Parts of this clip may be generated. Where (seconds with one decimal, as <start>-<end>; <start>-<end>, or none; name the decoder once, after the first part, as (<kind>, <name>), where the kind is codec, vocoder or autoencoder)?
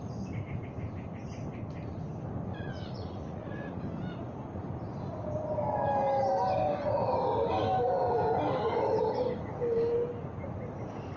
2.5-3.8 (vocoder, Vocos)